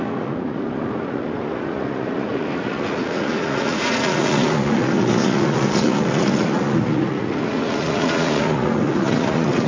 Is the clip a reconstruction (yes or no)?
yes